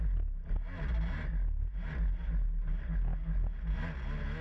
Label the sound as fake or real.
real